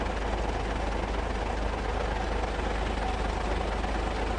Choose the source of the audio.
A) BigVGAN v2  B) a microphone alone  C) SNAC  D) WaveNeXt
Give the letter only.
B